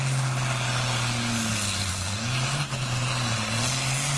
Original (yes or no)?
yes